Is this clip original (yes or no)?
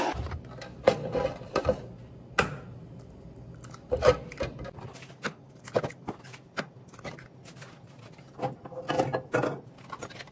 yes